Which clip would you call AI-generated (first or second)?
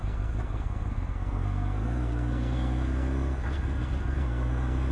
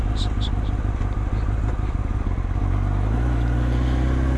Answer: first